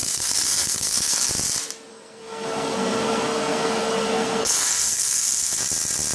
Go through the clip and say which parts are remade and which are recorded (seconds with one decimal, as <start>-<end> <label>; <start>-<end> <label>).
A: 0.0-1.3 remade; 1.3-1.9 recorded; 1.9-5.6 remade; 5.6-6.1 recorded